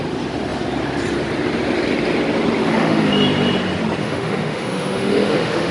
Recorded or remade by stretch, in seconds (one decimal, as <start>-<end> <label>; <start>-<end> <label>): 0.0-2.6 recorded; 2.6-3.1 remade; 3.1-4.0 recorded; 4.0-5.7 remade